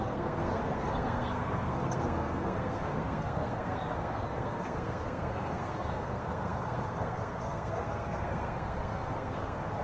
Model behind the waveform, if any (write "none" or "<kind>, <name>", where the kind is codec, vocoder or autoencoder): codec, SNAC